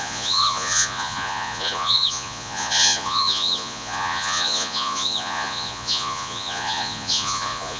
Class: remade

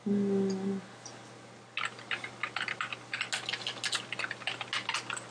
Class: recorded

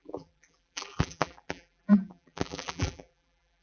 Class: remade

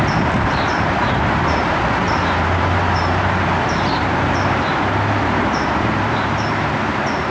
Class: remade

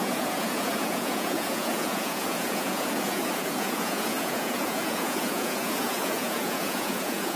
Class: remade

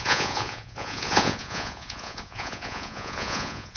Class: remade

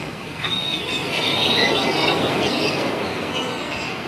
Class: remade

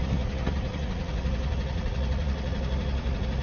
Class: remade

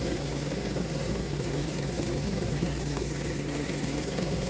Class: remade